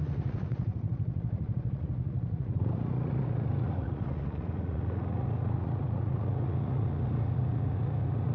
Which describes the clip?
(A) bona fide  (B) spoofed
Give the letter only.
B